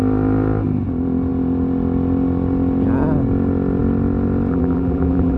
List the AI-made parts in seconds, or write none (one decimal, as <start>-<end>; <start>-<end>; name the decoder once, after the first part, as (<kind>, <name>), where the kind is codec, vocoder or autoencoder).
4.5-5.4 (vocoder, BigVGAN v2)

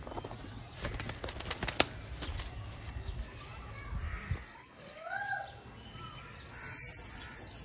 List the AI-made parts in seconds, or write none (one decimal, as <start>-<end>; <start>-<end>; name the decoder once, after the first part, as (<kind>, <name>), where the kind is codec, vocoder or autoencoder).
4.5-5.2 (codec, DAC)

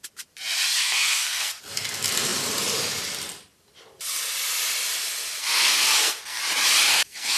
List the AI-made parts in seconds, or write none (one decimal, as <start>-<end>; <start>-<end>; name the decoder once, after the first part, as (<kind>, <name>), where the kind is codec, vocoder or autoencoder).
0.8-1.6 (codec, SNAC); 5.4-6.4; 6.9-7.4

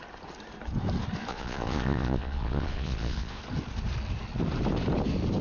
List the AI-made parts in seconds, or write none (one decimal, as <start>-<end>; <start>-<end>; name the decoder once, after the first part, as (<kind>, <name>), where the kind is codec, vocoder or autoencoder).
1.3-3.4 (vocoder, Vocos)

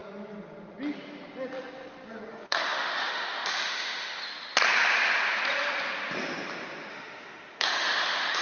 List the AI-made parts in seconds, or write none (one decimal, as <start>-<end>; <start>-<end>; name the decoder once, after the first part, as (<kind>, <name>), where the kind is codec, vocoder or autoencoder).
2.3-4.2 (autoencoder, DAC-VAE); 6.9-8.4

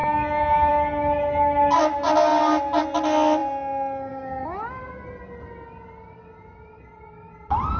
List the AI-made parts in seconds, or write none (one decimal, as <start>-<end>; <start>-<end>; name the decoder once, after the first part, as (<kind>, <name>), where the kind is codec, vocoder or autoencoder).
none

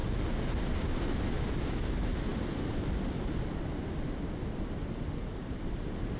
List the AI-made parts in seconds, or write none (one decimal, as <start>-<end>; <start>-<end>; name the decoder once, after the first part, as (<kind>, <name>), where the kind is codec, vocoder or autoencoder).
none